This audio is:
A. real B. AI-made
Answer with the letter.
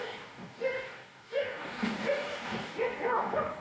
B